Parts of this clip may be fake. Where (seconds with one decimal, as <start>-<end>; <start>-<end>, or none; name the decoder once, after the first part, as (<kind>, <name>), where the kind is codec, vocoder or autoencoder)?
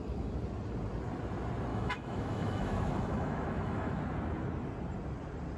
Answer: 1.7-4.0 (autoencoder, DAC-VAE)